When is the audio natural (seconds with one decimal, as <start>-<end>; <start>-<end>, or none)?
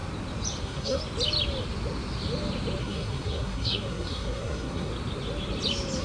0.0-0.6; 1.0-2.8; 4.9-6.0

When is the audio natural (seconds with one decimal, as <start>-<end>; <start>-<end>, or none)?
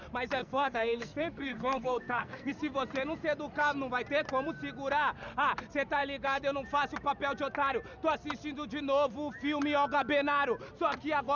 0.0-0.4; 2.5-11.4